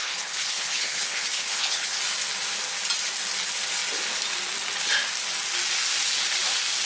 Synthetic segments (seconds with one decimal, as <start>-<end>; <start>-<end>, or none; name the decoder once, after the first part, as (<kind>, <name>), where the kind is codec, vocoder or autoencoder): 0.0-2.0 (codec, HILCodec)